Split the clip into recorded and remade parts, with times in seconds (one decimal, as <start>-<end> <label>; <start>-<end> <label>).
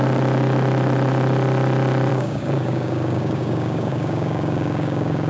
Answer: 0.0-2.1 recorded; 2.1-5.3 remade